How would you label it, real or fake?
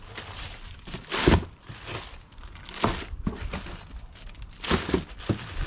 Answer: real